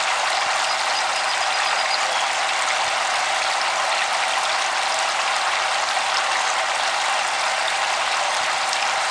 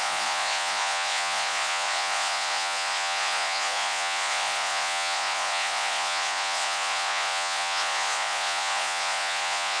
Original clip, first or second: first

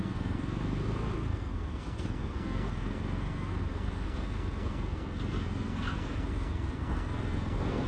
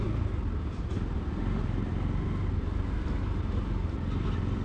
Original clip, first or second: second